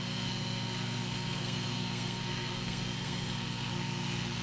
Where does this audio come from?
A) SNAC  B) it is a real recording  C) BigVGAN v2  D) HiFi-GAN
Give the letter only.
A